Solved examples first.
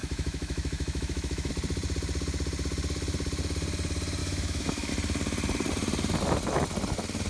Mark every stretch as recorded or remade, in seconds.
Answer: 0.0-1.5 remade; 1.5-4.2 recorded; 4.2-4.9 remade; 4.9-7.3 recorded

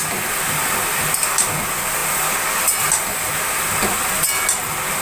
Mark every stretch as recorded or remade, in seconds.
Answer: 0.0-5.0 recorded

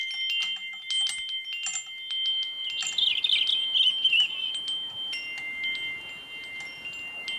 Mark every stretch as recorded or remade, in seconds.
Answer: 0.0-7.4 recorded

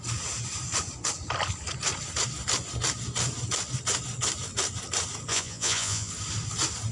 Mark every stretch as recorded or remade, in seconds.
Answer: 0.0-5.3 recorded; 5.3-6.1 remade; 6.1-6.9 recorded

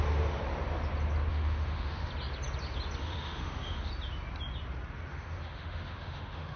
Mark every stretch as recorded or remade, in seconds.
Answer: 0.0-1.3 recorded; 1.3-2.1 remade; 2.1-3.0 recorded; 3.0-3.9 remade; 3.9-5.1 recorded; 5.1-6.6 remade